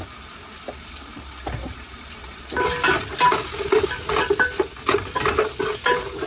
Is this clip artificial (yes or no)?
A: no